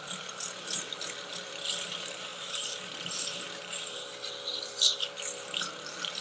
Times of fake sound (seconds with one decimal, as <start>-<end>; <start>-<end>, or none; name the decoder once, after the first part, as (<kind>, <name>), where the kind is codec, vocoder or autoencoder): 0.0-4.1 (vocoder, BigVGAN v2); 5.7-6.2

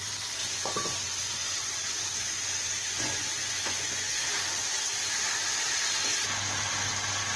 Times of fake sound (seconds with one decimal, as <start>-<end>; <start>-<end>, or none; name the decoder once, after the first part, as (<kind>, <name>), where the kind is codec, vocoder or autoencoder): 0.4-4.8 (vocoder, Vocos)